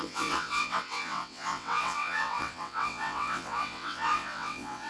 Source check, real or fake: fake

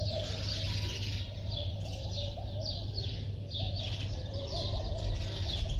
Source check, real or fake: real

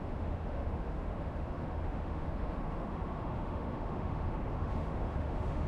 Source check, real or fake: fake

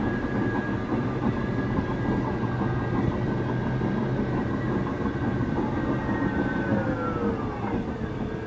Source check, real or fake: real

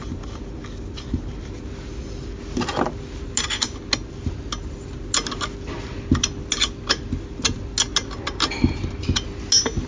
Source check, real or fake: real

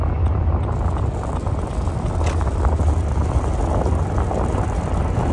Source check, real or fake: real